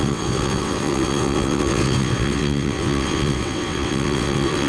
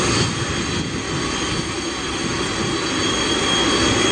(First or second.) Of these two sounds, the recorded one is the second